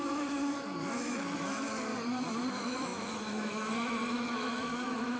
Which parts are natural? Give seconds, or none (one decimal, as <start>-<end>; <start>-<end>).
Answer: 1.9-2.5